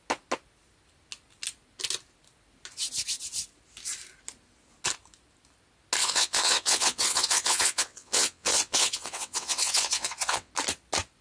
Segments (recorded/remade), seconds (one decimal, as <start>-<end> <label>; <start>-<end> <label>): 0.0-6.0 recorded; 6.0-10.5 remade; 10.5-11.2 recorded